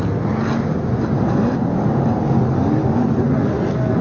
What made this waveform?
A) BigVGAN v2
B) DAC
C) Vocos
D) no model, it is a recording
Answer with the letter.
D